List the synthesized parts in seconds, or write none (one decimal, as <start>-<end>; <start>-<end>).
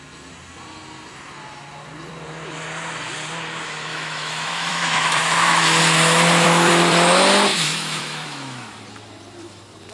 3.9-5.8; 7.5-8.8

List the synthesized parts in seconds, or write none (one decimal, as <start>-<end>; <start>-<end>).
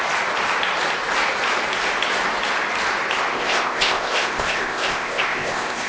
3.3-5.9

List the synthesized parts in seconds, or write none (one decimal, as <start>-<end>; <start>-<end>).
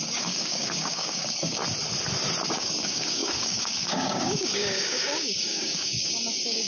0.0-1.6; 2.5-6.7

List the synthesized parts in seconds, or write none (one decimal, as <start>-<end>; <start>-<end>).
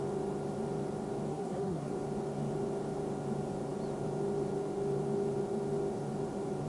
1.3-1.9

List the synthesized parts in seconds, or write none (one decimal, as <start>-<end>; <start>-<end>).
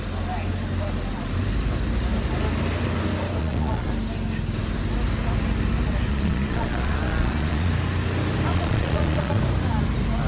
3.4-3.9; 6.1-7.7; 8.5-9.4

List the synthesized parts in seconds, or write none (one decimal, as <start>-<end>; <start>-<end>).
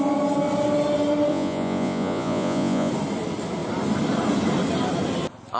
1.3-2.9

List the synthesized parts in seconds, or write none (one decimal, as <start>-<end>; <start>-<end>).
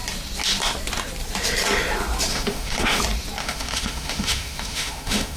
2.3-3.0; 3.4-5.4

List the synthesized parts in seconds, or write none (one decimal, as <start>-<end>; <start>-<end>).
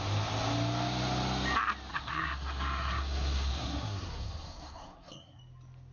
1.9-5.4